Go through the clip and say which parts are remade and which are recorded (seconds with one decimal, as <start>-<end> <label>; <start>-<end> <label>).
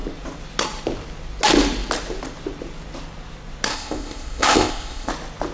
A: 0.0-3.7 recorded; 3.7-5.1 remade; 5.1-5.5 recorded